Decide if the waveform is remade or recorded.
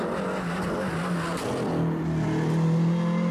recorded